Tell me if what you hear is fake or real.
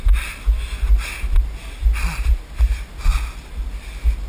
real